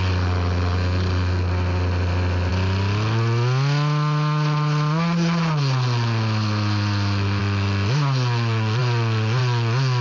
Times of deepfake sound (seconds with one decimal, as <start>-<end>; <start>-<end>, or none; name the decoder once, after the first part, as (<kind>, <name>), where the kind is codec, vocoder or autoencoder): none